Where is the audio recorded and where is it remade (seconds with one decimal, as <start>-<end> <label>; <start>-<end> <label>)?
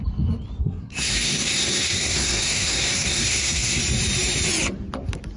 0.0-0.6 recorded; 0.6-3.8 remade; 3.8-5.4 recorded